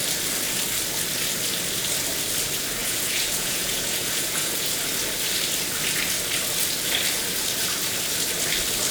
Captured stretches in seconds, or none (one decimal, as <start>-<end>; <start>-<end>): 0.0-2.8; 4.7-8.9